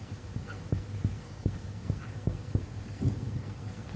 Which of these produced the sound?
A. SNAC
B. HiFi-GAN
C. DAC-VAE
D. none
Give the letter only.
A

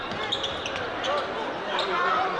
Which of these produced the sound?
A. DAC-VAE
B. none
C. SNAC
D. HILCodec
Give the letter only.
B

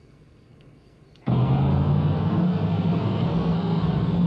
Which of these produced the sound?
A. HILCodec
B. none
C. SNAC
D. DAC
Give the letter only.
C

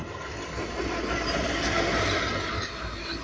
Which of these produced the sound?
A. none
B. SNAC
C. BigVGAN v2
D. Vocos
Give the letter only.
A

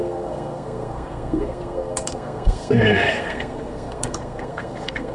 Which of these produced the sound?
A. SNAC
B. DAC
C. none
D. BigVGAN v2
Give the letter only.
A